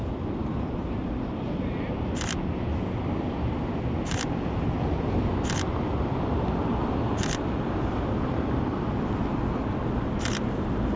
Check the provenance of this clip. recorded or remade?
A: recorded